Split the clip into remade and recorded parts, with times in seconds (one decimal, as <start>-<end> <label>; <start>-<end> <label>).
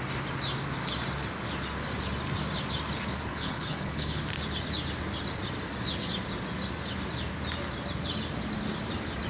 0.0-3.3 recorded; 3.3-4.2 remade; 4.2-9.3 recorded